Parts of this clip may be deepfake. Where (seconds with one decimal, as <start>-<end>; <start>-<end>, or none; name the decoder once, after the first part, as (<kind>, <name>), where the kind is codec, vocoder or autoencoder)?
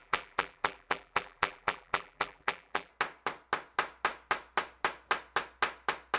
0.0-2.9 (vocoder, BigVGAN v2)